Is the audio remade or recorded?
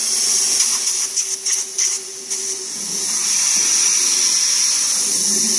recorded